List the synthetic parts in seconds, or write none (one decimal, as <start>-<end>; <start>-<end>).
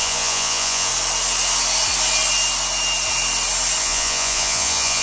0.0-0.9; 3.8-5.0